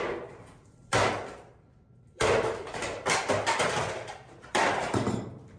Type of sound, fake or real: fake